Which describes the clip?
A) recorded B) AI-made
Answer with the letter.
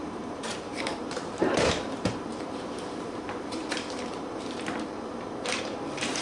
B